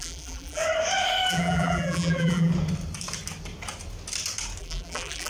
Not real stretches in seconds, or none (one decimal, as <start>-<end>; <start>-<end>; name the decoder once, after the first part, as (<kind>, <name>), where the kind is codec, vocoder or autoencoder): 0.0-0.6 (vocoder, BigVGAN v2); 1.3-2.5; 4.6-5.3